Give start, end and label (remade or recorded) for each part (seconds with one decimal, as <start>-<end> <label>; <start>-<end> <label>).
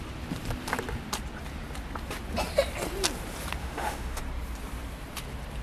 0.0-3.6 recorded; 3.6-4.2 remade; 4.2-5.6 recorded